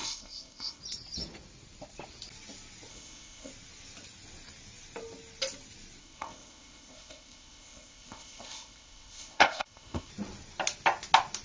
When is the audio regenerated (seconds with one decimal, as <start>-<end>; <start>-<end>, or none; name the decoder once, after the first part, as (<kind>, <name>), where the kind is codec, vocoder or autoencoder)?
0.0-0.8 (codec, ZipCodec); 2.9-3.5; 6.0-10.1